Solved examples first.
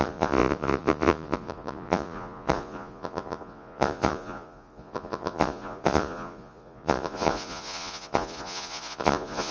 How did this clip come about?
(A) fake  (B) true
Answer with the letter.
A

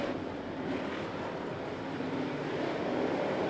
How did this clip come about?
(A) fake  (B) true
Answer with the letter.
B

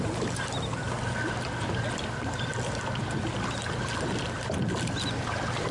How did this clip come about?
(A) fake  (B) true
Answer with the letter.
B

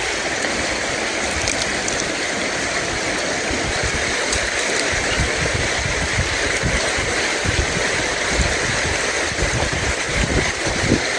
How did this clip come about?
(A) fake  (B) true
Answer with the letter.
B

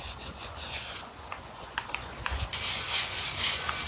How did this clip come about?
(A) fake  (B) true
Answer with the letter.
A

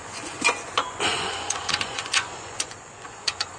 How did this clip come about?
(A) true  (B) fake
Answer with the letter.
B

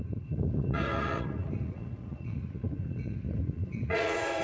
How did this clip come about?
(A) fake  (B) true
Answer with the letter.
A